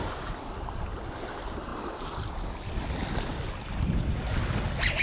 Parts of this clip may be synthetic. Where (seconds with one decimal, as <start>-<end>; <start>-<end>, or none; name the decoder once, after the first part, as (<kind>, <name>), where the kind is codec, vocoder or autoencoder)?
none